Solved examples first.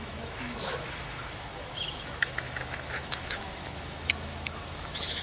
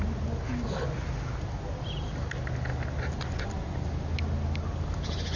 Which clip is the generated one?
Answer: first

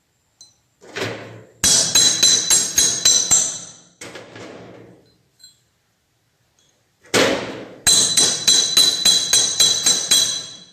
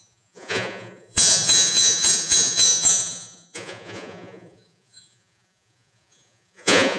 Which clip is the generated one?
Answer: second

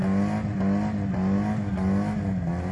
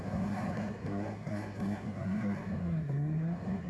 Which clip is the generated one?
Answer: second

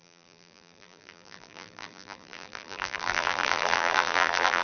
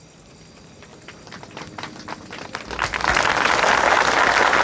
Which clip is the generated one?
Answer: first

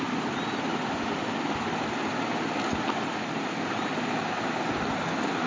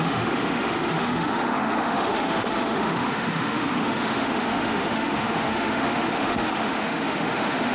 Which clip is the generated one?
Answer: second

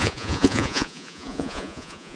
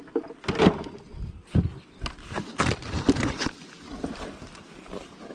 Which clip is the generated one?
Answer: first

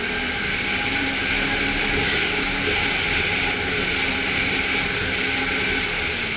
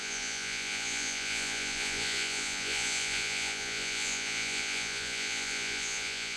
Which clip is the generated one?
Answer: second